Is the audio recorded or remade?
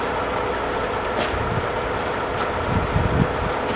recorded